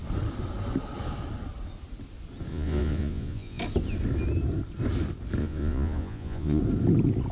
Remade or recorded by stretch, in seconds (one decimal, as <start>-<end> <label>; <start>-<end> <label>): 0.0-2.5 recorded; 2.5-3.6 remade; 3.6-5.4 recorded; 5.4-6.6 remade; 6.6-7.3 recorded